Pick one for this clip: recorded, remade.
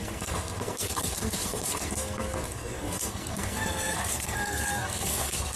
remade